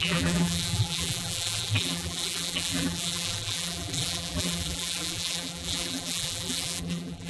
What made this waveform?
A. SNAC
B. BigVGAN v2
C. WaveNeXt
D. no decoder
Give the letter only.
B